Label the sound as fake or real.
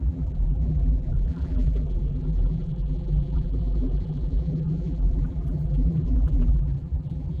fake